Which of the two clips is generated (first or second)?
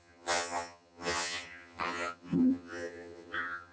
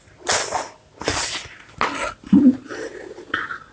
first